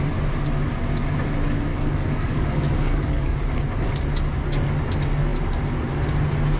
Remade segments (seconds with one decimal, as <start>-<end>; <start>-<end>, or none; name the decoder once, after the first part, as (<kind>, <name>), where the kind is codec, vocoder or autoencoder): 1.7-3.6 (codec, DAC)